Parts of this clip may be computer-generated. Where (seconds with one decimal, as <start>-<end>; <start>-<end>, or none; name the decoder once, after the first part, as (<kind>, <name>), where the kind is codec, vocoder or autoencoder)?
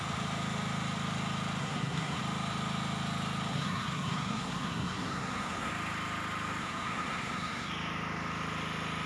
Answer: 1.6-2.2 (codec, SNAC); 3.5-5.7; 6.6-7.7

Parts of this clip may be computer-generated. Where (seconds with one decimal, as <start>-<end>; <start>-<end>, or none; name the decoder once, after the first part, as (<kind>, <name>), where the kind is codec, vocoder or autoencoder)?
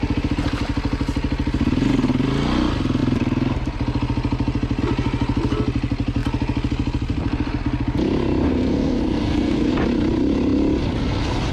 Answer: 8.5-9.7 (codec, SNAC)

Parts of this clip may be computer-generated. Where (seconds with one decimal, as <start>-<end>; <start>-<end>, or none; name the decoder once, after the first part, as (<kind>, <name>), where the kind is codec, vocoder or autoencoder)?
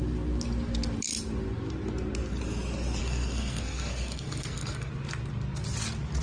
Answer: 3.0-4.9 (codec, SNAC)